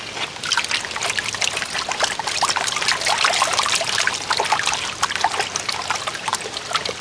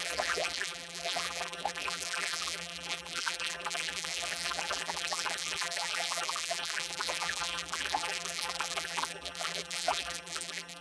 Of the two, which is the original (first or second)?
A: first